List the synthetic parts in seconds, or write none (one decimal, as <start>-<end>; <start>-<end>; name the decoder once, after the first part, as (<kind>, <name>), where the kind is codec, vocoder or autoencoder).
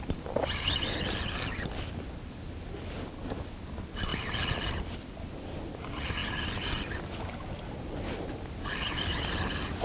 none